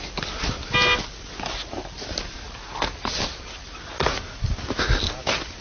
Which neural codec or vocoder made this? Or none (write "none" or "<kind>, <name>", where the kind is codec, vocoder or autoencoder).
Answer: none